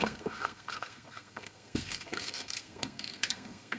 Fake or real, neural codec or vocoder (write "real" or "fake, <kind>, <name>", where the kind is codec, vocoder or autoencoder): fake, codec, SNAC